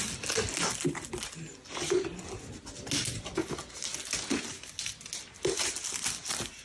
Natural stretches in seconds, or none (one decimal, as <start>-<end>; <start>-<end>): 0.0-6.6